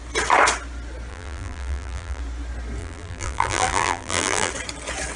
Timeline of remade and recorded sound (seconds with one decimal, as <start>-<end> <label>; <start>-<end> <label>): 0.0-1.1 recorded; 1.1-2.2 remade; 2.2-2.8 recorded; 2.8-4.5 remade; 4.5-5.2 recorded